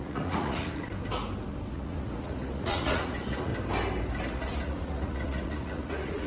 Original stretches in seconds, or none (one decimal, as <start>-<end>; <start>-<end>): 0.8-1.7; 3.5-4.2